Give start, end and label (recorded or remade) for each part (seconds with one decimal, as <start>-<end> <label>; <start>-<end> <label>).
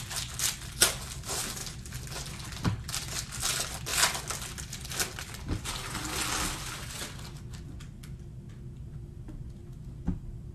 0.0-10.5 recorded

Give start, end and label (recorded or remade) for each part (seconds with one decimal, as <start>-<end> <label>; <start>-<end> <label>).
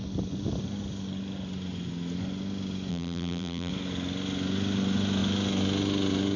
0.0-2.9 recorded; 2.9-3.7 remade; 3.7-6.4 recorded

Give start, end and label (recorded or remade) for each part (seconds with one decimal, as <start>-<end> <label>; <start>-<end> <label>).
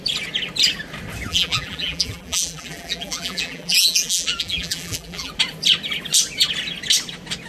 0.0-1.3 recorded; 1.3-5.3 remade; 5.3-7.5 recorded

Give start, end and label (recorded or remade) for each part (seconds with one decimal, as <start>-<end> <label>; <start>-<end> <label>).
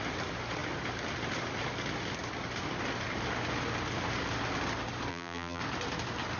0.0-5.1 recorded; 5.1-5.6 remade; 5.6-6.4 recorded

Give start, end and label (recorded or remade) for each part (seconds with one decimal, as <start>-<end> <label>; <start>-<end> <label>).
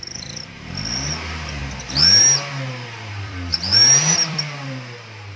0.0-1.6 remade; 1.6-3.1 recorded; 3.1-3.7 remade; 3.7-4.3 recorded; 4.3-5.4 remade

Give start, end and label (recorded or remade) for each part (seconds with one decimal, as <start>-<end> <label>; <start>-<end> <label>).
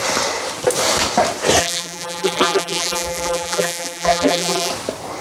0.0-1.6 recorded; 1.6-4.7 remade; 4.7-5.2 recorded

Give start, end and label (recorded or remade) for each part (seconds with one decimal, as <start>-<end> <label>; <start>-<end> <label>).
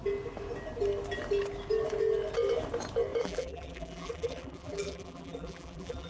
0.0-3.2 recorded; 3.2-6.1 remade